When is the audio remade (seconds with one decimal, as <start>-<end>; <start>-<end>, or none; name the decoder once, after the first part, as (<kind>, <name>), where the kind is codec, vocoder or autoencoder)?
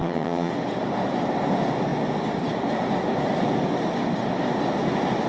0.0-0.5 (vocoder, HiFi-GAN)